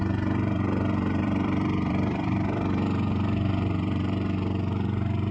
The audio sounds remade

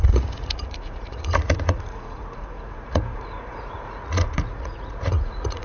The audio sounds remade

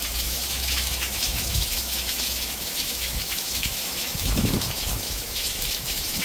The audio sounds remade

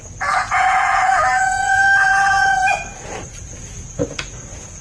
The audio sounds remade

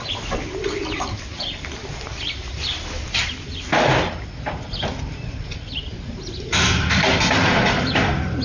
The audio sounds recorded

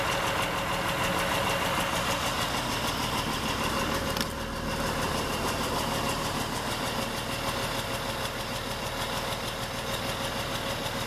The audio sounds recorded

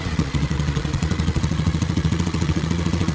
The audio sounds remade